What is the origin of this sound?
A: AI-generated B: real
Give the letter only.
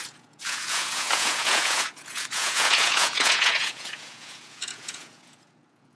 A